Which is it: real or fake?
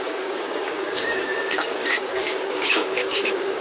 fake